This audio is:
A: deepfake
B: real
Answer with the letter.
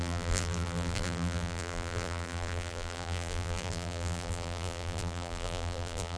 A